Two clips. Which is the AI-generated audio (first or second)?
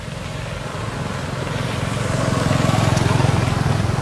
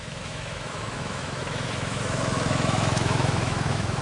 second